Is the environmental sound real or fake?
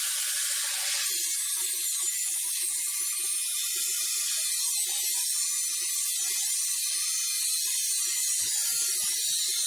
real